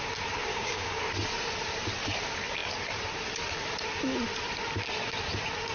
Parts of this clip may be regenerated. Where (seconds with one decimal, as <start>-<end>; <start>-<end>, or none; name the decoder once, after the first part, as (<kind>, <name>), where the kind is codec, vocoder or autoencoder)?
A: 0.5-1.0 (codec, DAC)